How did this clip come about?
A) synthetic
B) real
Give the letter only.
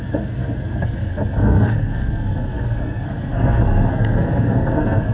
A